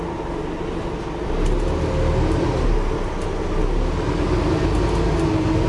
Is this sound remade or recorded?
recorded